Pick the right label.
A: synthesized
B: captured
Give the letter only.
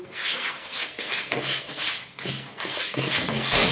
A